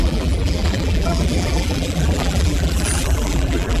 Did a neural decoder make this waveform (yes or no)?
yes